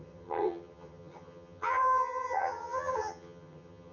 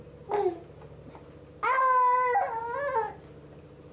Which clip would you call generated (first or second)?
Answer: first